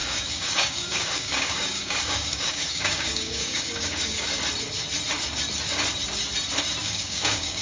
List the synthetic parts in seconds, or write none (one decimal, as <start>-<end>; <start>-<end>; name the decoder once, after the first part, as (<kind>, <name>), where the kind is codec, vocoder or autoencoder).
0.0-4.4 (codec, DAC); 6.8-7.6